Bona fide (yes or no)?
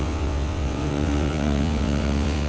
no